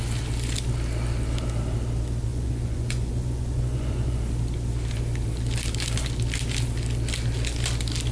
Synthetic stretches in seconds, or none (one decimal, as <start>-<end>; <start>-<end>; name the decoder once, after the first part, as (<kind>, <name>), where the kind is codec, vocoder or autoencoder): 2.3-4.2 (vocoder, Vocos)